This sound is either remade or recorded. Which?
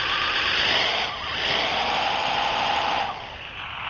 recorded